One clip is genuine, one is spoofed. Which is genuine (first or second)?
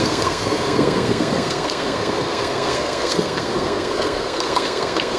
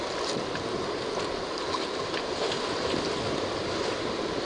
second